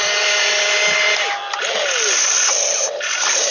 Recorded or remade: recorded